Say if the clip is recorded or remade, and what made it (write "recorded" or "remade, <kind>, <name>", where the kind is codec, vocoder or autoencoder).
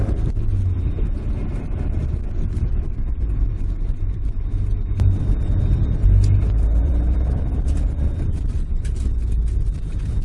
remade, vocoder, BigVGAN v2